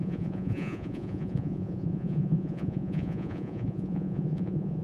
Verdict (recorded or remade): remade